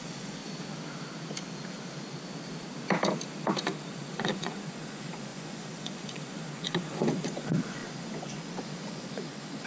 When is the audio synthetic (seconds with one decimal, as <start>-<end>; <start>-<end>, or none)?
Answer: 0.0-0.4; 3.9-9.7